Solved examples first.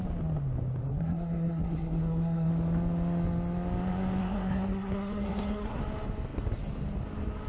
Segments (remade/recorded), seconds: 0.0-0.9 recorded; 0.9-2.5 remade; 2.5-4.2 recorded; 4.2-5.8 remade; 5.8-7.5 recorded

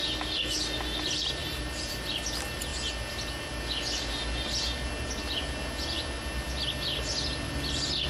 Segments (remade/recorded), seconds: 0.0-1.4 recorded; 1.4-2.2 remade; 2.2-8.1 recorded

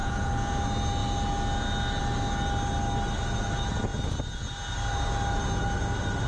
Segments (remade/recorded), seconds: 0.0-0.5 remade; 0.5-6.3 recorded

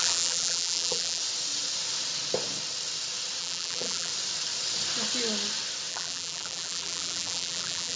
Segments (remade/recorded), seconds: 0.0-1.2 remade; 1.2-3.4 recorded; 3.4-4.1 remade; 4.1-5.9 recorded; 5.9-8.0 remade

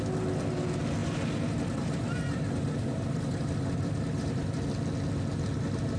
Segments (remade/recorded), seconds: 0.0-1.0 recorded; 1.0-4.6 remade; 4.6-6.0 recorded